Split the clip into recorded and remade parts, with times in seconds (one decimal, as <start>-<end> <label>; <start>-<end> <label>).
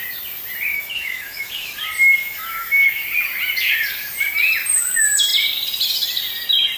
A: 0.0-0.7 recorded; 0.7-1.7 remade; 1.7-2.2 recorded; 2.2-3.0 remade; 3.0-6.8 recorded